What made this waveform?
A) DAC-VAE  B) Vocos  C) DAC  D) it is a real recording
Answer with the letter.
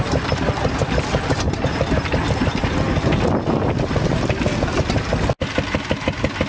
D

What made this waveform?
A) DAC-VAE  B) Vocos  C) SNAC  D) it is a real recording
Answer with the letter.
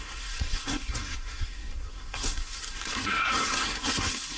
C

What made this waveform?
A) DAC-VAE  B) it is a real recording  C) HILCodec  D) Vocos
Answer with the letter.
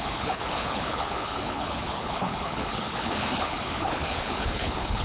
C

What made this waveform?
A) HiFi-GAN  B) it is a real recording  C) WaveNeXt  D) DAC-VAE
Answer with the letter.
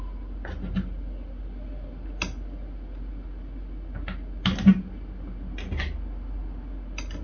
B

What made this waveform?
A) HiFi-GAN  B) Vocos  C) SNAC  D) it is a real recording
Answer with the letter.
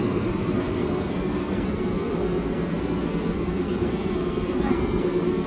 C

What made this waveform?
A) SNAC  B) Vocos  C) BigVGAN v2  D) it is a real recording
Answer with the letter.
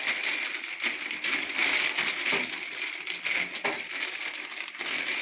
D